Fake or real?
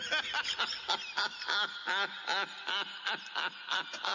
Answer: real